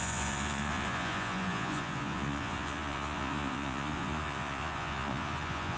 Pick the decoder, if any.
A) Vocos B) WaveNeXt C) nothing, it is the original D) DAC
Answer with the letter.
A